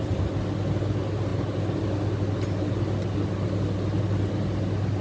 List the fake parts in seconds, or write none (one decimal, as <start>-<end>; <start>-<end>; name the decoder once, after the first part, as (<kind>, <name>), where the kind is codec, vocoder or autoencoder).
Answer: none